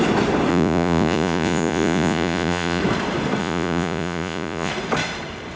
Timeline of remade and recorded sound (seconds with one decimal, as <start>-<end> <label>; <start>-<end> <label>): 0.0-0.5 recorded; 0.5-2.8 remade; 2.8-3.4 recorded; 3.4-4.7 remade; 4.7-5.6 recorded